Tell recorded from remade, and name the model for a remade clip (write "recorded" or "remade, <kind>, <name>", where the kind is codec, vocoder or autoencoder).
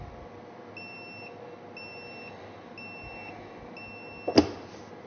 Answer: recorded